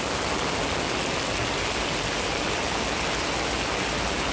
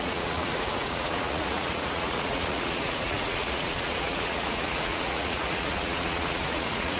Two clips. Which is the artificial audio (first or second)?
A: second